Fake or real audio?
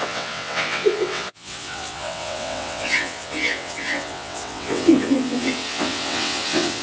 fake